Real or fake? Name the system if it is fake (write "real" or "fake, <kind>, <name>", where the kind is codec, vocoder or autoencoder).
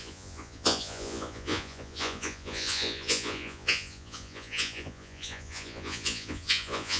fake, vocoder, Vocos